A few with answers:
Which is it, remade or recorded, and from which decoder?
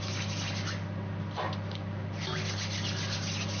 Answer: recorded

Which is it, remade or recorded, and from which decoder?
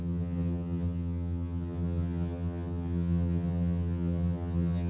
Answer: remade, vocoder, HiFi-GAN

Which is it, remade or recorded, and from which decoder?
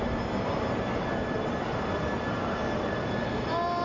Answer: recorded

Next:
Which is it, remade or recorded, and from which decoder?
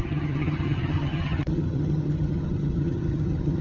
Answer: remade, vocoder, HiFi-GAN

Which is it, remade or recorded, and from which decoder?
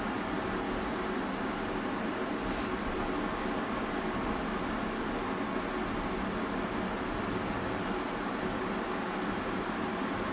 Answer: recorded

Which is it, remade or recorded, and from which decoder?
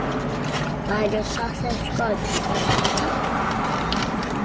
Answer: recorded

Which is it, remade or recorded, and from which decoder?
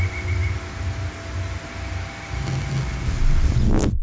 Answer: recorded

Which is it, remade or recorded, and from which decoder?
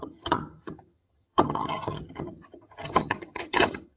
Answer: remade, vocoder, HiFi-GAN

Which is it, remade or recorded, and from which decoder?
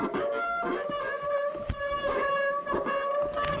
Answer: recorded